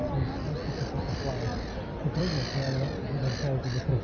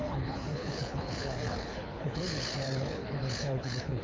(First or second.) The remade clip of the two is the second